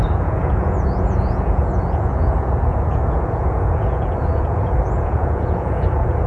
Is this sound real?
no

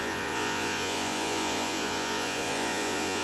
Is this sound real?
no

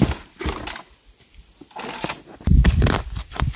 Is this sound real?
yes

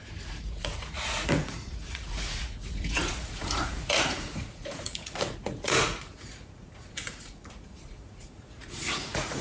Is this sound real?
no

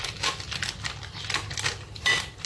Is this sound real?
yes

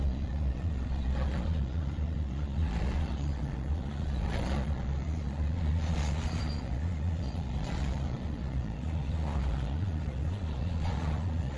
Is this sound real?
no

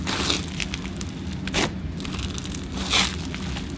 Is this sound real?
yes